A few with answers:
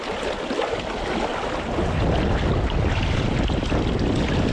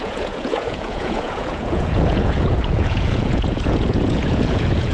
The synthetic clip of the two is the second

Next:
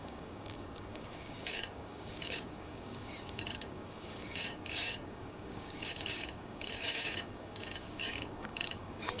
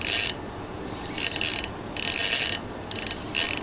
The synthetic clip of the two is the first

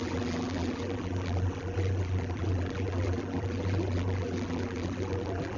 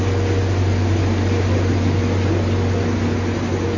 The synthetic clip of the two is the first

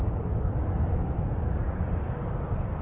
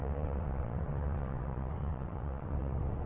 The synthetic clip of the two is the second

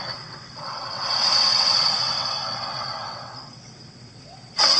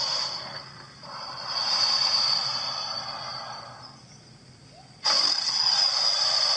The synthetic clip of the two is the first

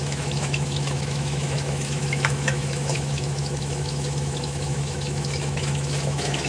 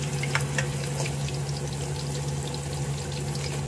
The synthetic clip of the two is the first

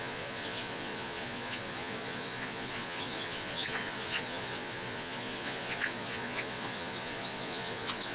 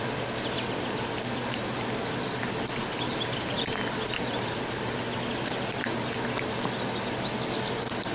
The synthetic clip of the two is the first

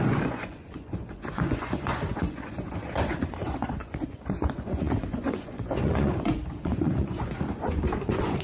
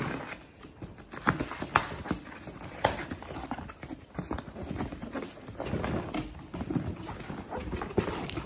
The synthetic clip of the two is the first